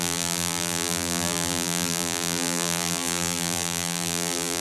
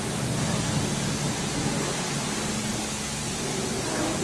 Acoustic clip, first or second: second